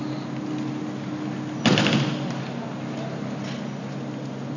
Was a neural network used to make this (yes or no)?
no